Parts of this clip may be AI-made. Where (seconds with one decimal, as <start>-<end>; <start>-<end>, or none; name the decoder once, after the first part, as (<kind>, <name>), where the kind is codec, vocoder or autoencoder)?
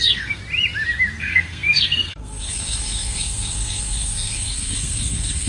0.0-0.4 (codec, SNAC); 1.2-5.5